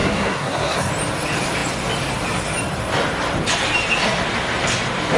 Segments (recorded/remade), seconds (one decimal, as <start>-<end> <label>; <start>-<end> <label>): 0.0-0.9 remade; 0.9-5.2 recorded

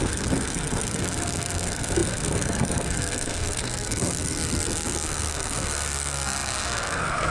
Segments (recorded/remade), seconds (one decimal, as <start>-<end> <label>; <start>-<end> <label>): 0.0-7.3 remade